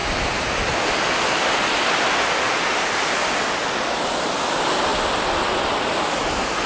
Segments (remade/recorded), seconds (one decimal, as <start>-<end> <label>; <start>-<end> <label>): 0.0-6.7 recorded

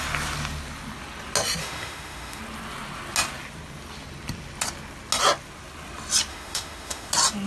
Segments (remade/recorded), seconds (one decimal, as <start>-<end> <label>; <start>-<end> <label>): 0.0-1.6 recorded; 1.6-2.4 remade; 2.4-6.3 recorded; 6.3-7.1 remade; 7.1-7.5 recorded

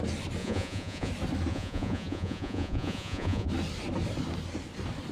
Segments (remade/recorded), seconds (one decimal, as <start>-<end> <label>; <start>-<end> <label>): 0.0-0.4 recorded; 0.4-1.1 remade; 1.1-1.5 recorded; 1.5-3.5 remade; 3.5-5.1 recorded

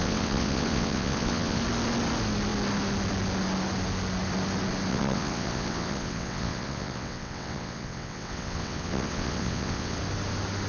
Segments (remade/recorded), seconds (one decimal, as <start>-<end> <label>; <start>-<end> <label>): 0.0-1.6 remade; 1.6-4.9 recorded; 4.9-10.0 remade; 10.0-10.7 recorded

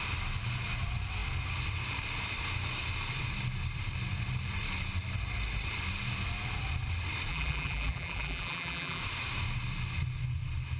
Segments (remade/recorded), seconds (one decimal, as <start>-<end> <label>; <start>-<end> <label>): 0.0-7.3 recorded; 7.3-9.0 remade; 9.0-10.8 recorded

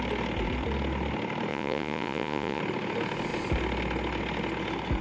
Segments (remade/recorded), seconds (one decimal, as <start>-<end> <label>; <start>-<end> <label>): 0.0-1.5 recorded; 1.5-2.6 remade; 2.6-5.0 recorded

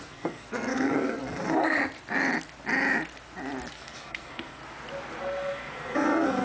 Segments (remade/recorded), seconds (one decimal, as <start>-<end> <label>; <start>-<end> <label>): 0.0-1.8 remade; 1.8-3.7 recorded; 3.7-4.6 remade; 4.6-5.2 recorded; 5.2-6.4 remade

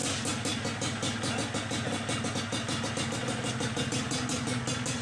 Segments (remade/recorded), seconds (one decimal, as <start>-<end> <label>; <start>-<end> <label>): 0.0-5.0 recorded